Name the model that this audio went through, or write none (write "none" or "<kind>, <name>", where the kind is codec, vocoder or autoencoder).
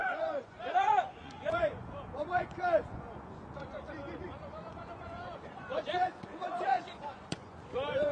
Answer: vocoder, Vocos